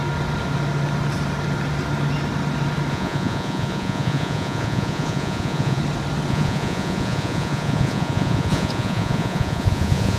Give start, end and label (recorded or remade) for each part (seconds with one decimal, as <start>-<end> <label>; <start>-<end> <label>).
0.0-2.9 recorded; 2.9-5.8 remade; 5.8-6.3 recorded; 6.3-10.2 remade